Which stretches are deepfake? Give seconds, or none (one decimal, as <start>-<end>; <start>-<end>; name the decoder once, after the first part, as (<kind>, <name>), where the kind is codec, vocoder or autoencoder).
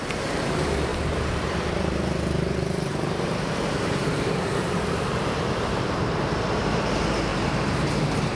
0.0-0.9 (vocoder, BigVGAN v2); 1.7-8.4